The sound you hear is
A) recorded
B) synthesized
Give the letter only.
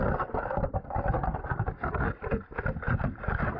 A